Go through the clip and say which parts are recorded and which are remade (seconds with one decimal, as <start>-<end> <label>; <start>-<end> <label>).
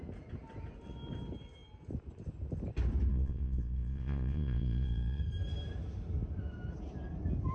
0.0-3.1 recorded; 3.1-5.2 remade; 5.2-7.5 recorded